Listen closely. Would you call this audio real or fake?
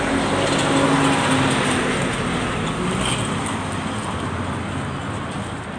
real